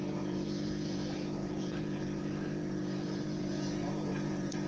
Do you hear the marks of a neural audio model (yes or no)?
yes